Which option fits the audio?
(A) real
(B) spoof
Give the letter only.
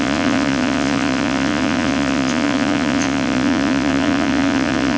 B